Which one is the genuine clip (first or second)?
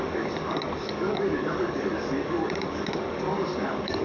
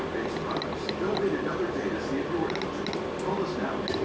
second